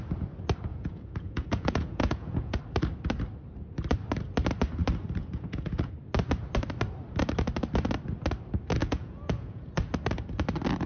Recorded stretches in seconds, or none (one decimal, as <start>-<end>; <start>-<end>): 0.0-0.7; 2.6-5.2; 5.9-8.8; 9.7-10.9